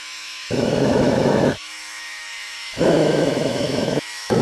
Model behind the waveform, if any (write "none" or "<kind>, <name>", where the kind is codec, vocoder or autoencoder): autoencoder, DAC-VAE